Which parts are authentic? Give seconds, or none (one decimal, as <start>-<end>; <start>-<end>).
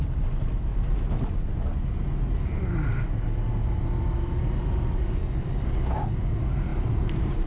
0.0-0.7; 1.3-6.7